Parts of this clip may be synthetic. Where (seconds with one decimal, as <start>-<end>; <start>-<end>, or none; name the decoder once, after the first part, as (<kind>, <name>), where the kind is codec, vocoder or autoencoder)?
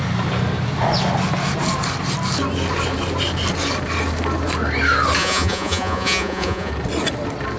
5.2-6.7 (vocoder, Vocos)